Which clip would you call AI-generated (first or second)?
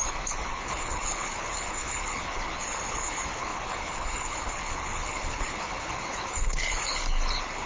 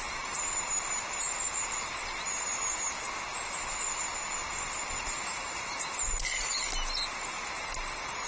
first